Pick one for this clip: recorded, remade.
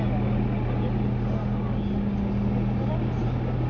recorded